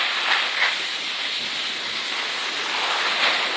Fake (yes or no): no